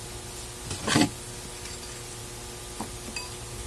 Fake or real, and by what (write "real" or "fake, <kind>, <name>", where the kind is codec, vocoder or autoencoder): real